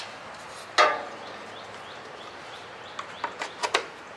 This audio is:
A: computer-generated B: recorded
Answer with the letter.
B